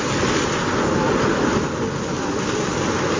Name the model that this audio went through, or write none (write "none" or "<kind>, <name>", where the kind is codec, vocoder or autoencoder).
none